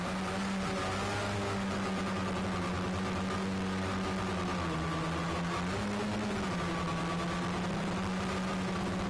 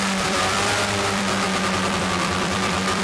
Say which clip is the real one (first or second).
first